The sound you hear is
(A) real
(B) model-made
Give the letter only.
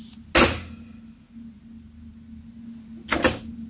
A